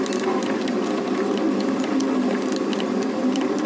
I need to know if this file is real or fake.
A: real